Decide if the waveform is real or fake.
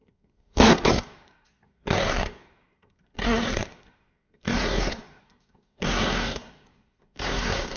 fake